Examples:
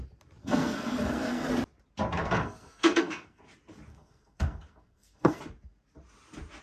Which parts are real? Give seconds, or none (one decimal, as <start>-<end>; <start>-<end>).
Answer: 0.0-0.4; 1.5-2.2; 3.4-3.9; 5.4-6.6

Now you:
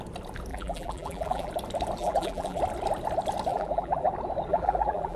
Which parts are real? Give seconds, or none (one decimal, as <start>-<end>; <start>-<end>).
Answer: 0.0-0.5; 1.5-2.0; 2.6-3.5; 4.1-4.5

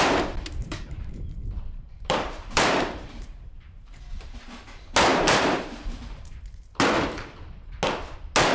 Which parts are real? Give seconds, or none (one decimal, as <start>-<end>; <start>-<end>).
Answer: 0.0-0.6; 4.0-5.1; 6.4-8.5